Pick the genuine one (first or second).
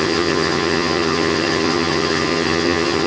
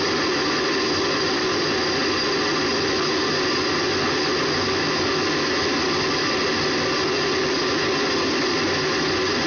second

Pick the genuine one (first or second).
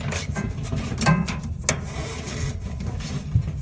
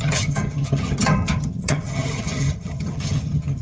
first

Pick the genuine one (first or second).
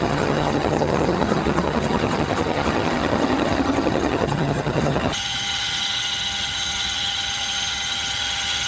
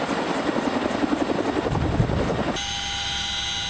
second